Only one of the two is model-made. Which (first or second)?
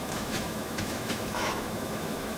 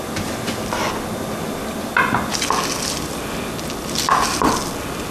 first